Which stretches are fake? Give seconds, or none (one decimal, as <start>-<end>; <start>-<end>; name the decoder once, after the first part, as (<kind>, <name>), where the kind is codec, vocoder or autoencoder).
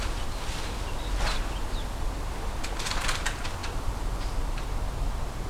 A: none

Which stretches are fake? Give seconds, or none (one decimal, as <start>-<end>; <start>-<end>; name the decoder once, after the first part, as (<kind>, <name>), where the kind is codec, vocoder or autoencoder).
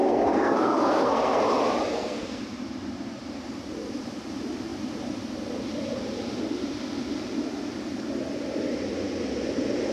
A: 0.0-1.4 (codec, SNAC); 1.9-2.4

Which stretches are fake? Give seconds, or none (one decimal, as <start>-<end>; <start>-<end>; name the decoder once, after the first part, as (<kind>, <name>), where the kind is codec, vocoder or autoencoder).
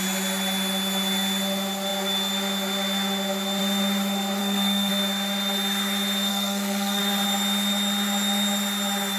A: 4.4-4.9 (codec, SNAC); 6.3-7.0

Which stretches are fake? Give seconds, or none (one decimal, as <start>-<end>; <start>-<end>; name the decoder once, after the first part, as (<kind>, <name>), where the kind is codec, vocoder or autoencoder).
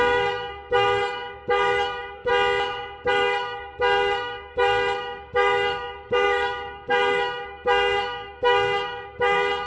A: 0.0-2.3 (codec, SNAC); 3.1-9.7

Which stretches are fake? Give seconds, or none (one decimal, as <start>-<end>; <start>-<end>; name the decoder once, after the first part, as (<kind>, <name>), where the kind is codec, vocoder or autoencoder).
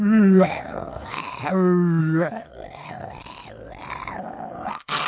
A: 0.0-1.2 (codec, SNAC); 2.0-3.2; 4.5-5.1